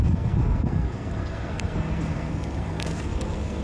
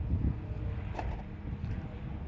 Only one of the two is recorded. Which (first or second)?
second